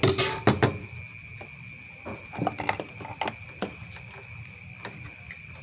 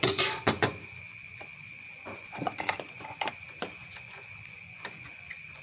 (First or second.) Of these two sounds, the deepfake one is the second